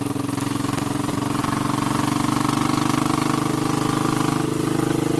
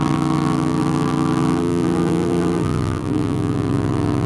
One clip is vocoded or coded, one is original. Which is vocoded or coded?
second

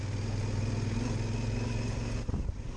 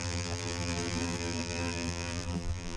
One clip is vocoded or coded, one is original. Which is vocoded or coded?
second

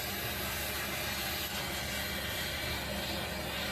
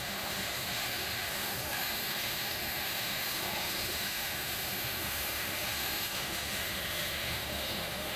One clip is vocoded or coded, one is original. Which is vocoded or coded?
second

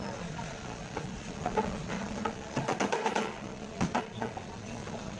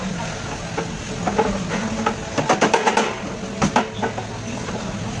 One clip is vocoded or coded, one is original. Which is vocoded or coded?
first